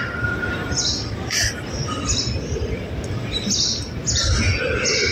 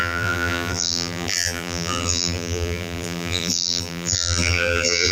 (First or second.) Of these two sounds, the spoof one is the second